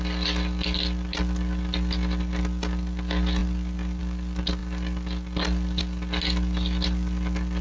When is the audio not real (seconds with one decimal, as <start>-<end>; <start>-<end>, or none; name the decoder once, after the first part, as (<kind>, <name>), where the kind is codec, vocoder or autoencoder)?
none